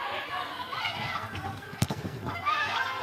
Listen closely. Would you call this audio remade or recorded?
remade